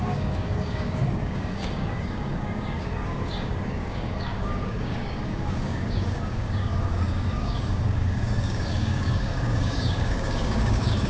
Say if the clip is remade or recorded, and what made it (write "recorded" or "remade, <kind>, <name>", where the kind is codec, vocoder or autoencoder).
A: remade, codec, DAC